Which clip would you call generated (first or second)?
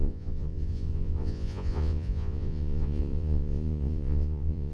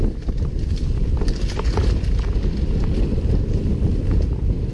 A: first